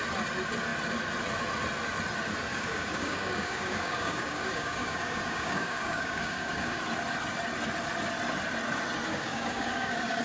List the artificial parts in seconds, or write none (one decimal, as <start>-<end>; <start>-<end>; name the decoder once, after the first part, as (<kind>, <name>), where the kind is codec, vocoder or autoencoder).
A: 2.5-6.8 (codec, DAC); 9.1-10.2